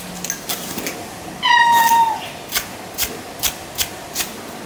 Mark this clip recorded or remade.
recorded